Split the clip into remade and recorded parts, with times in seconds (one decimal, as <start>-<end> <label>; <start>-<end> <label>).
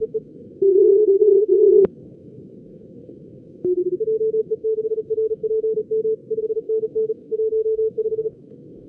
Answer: 0.0-3.8 remade; 3.8-4.4 recorded; 4.4-5.8 remade; 5.8-6.4 recorded; 6.4-8.9 remade